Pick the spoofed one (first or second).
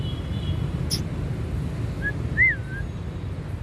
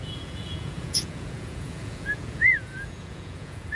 second